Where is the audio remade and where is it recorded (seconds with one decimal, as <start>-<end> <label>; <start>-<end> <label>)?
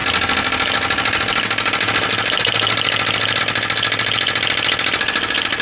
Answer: 0.0-5.6 recorded